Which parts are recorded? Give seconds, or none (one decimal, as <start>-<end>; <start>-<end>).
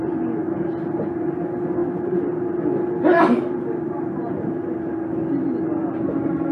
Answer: 0.0-0.4; 1.4-6.5